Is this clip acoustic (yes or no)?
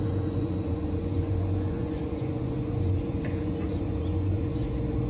no